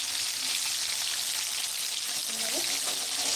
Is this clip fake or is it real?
real